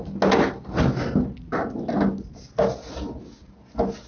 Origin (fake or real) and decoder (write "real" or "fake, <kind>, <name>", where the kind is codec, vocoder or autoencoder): real